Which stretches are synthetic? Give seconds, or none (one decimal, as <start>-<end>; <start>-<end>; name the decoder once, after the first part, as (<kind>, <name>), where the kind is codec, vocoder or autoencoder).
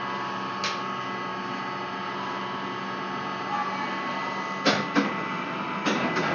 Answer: none